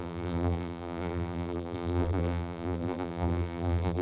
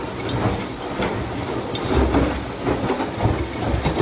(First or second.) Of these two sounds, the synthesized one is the first